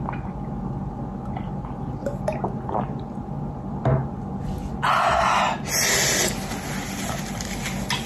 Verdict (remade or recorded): recorded